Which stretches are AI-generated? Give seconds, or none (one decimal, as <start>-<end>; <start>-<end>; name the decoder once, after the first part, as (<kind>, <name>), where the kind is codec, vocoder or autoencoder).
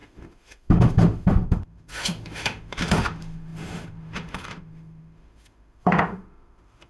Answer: 0.0-6.9 (autoencoder, DAC-VAE)